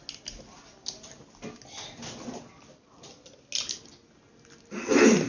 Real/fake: real